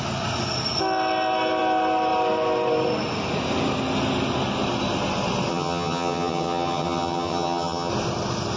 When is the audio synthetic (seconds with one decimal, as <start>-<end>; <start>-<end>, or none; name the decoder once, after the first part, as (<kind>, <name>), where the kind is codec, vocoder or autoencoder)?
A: 5.5-7.9 (vocoder, HiFi-GAN)